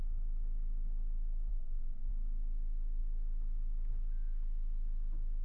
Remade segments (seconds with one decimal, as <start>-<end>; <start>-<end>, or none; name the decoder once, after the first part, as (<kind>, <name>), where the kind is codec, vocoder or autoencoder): 1.5-2.1 (vocoder, Vocos)